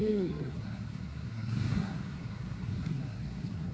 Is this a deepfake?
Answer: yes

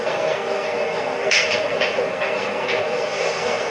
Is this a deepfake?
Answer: yes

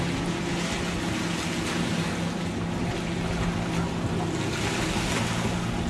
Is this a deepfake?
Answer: no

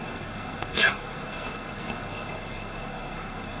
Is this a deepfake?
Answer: yes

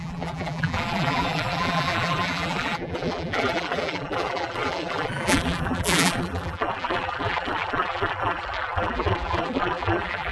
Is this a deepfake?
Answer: yes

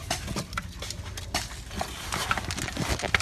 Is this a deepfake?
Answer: no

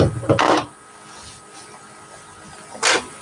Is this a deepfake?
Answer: no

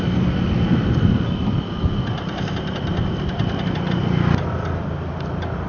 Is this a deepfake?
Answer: no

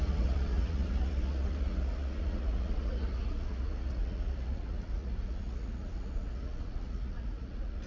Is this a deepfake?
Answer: yes